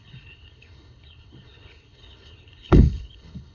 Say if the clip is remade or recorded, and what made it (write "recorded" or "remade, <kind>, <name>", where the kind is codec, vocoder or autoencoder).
remade, codec, HILCodec